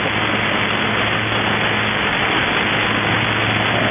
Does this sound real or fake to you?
real